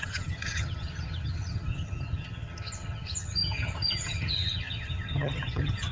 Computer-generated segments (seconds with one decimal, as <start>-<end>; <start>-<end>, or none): 0.0-5.9